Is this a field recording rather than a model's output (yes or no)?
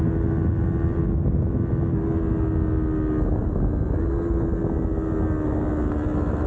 yes